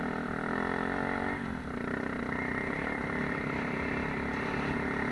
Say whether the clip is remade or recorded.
recorded